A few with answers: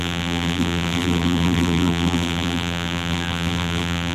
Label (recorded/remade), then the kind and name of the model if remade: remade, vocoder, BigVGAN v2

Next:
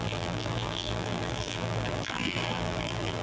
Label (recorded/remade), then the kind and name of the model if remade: remade, vocoder, BigVGAN v2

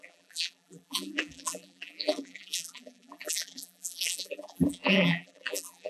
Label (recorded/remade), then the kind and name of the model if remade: remade, vocoder, BigVGAN v2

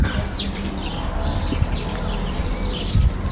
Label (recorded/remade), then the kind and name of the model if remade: recorded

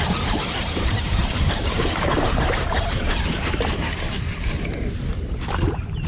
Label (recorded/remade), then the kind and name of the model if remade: remade, vocoder, BigVGAN v2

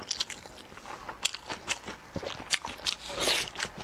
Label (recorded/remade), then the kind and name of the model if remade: recorded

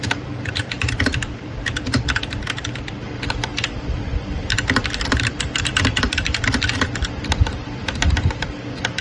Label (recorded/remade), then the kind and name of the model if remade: remade, vocoder, BigVGAN v2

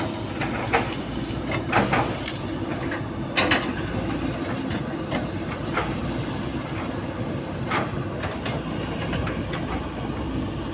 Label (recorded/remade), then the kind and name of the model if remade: recorded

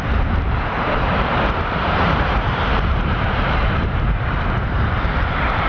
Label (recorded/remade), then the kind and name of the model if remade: remade, vocoder, BigVGAN v2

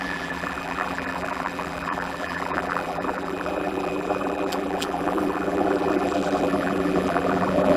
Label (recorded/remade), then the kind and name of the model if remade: remade, vocoder, BigVGAN v2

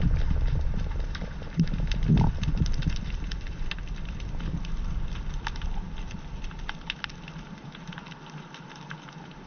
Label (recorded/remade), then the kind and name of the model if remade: remade, vocoder, BigVGAN v2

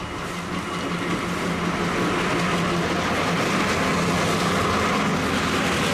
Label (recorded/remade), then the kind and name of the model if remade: recorded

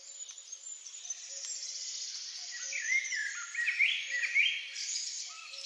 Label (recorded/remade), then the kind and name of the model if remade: remade, vocoder, BigVGAN v2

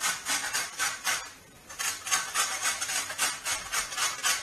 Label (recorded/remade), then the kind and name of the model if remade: remade, vocoder, BigVGAN v2